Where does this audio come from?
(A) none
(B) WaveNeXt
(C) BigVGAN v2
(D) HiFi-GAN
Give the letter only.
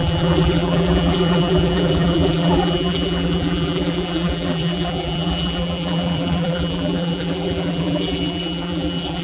C